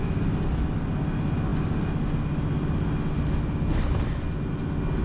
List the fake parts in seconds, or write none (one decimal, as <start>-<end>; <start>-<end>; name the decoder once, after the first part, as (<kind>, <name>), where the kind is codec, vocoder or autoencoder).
none